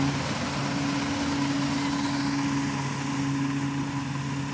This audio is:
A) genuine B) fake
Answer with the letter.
A